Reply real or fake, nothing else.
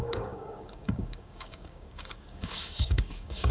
fake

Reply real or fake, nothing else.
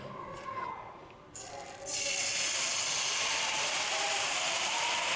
real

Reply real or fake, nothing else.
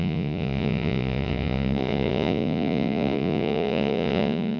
fake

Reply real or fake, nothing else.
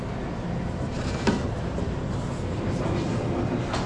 real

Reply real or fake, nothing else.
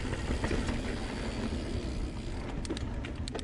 real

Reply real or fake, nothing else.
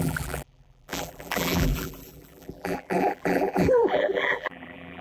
fake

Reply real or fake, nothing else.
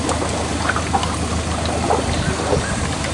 real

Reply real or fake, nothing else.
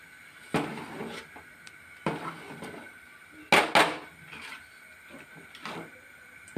real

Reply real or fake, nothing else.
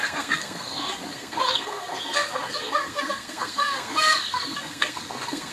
fake